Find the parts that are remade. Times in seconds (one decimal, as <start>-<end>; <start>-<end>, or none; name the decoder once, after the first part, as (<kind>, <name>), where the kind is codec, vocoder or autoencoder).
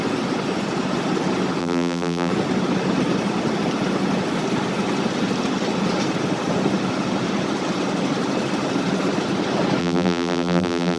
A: 1.6-2.3 (vocoder, BigVGAN v2); 9.8-11.0